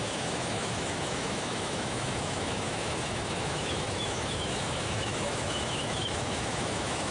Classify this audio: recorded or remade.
remade